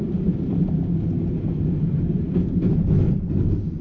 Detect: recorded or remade recorded